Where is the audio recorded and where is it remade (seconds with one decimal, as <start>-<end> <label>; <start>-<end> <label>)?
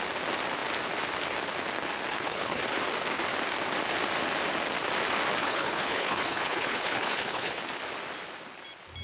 0.0-2.1 recorded; 2.1-2.6 remade; 2.6-5.4 recorded; 5.4-7.6 remade; 7.6-9.0 recorded